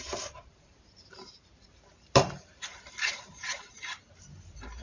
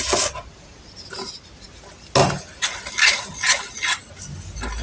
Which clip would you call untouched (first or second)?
second